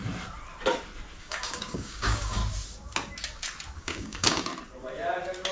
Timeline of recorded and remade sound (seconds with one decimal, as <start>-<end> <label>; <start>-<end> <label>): 0.0-1.2 recorded; 1.2-2.4 remade; 2.4-3.8 recorded; 3.8-4.5 remade; 4.5-5.5 recorded

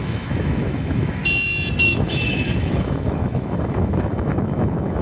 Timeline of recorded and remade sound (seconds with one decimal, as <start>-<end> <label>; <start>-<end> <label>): 0.0-1.2 remade; 1.2-1.8 recorded; 1.8-5.0 remade